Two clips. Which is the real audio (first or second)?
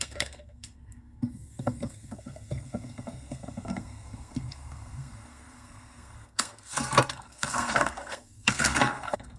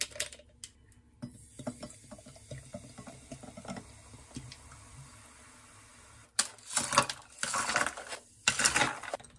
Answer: second